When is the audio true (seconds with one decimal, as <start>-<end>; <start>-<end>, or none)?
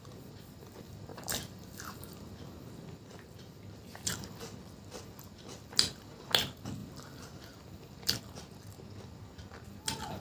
0.0-1.1; 2.1-3.1; 4.1-6.8; 8.1-10.2